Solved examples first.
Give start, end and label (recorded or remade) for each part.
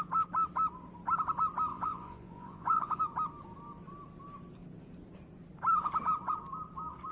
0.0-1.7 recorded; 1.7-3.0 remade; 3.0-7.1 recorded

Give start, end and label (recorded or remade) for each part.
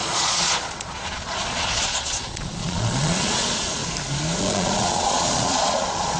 0.0-3.8 remade; 3.8-4.4 recorded; 4.4-6.2 remade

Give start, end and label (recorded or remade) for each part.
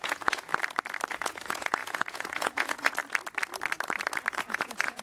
0.0-0.5 remade; 0.5-1.1 recorded; 1.1-3.0 remade; 3.0-4.4 recorded; 4.4-5.0 remade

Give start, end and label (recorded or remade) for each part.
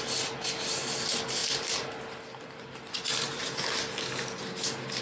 0.0-5.0 recorded